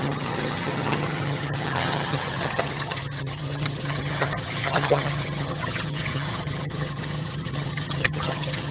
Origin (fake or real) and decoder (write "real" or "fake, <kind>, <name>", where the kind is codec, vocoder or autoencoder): fake, vocoder, HiFi-GAN